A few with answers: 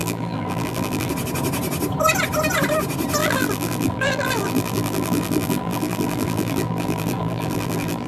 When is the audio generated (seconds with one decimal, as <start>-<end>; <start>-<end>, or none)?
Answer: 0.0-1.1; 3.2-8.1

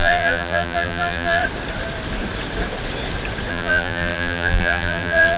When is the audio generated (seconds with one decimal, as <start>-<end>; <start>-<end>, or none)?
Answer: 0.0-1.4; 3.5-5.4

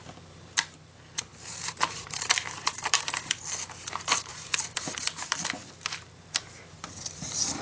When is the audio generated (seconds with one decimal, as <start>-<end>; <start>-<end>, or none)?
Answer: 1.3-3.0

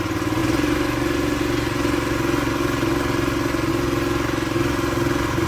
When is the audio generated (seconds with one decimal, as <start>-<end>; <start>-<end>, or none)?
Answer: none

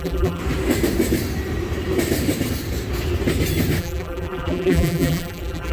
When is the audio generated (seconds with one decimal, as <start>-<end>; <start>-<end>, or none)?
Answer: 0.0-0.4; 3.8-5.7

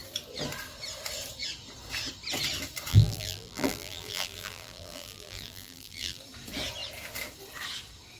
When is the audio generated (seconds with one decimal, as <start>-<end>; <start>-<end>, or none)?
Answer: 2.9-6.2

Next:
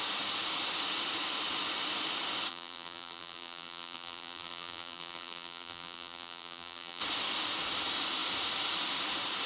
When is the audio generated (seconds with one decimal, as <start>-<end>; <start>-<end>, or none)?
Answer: 2.5-7.0